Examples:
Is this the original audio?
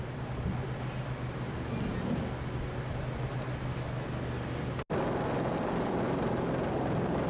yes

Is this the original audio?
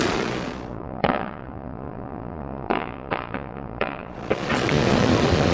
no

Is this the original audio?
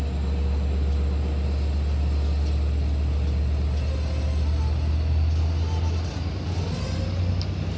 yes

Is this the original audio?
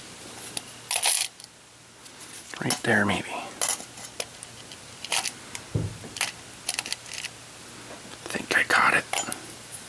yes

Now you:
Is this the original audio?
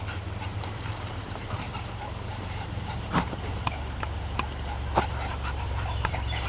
no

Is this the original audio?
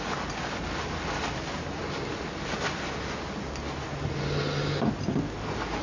yes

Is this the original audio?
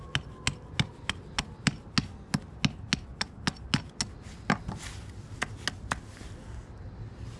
yes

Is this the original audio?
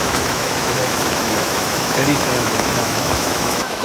no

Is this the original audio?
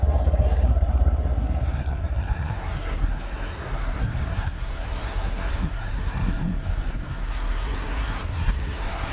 no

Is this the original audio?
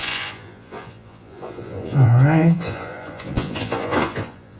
no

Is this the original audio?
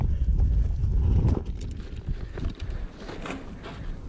yes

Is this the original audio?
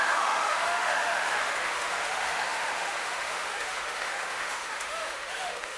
no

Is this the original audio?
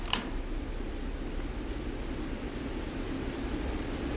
yes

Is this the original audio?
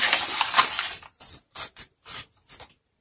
yes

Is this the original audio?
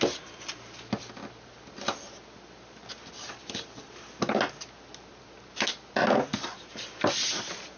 yes